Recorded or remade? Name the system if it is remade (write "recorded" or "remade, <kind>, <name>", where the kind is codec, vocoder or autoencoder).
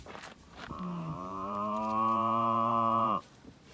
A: remade, vocoder, BigVGAN v2